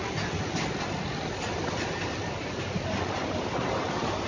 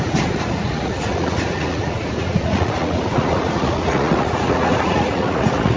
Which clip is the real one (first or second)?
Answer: first